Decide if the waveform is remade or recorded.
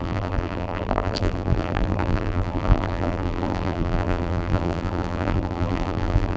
remade